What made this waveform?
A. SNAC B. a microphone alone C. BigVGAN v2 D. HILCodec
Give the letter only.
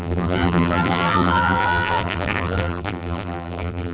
C